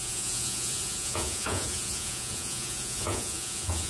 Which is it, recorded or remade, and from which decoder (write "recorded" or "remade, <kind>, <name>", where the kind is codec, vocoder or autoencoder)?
remade, vocoder, Vocos